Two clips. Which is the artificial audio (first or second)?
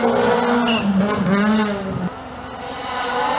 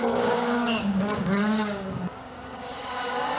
second